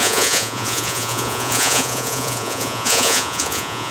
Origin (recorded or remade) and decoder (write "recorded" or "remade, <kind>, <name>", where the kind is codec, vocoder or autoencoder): remade, vocoder, Vocos